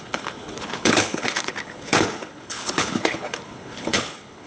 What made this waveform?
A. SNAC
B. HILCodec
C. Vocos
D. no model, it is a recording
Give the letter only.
B